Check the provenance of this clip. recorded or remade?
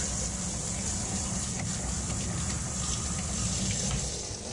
recorded